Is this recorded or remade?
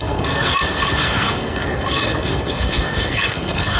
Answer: remade